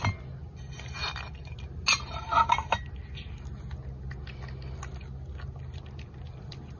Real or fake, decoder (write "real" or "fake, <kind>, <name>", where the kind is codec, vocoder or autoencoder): real